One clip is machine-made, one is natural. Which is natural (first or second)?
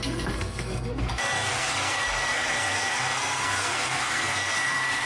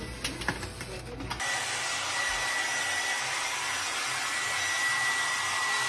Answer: second